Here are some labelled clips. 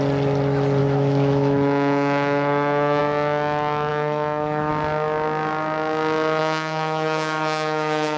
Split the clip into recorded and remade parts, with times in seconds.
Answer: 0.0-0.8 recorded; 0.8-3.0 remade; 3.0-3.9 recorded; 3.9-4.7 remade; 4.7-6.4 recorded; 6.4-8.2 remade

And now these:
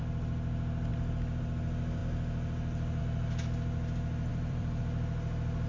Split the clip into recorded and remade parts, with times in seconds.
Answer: 0.0-4.3 recorded; 4.3-4.8 remade; 4.8-5.7 recorded

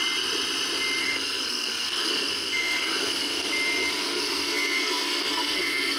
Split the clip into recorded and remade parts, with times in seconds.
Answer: 0.0-1.0 recorded; 1.0-3.5 remade; 3.5-4.0 recorded; 4.0-6.0 remade

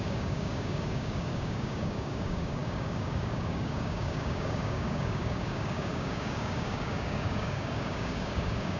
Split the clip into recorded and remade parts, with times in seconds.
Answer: 0.0-8.8 remade